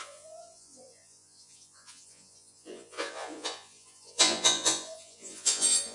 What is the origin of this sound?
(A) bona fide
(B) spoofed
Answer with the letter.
B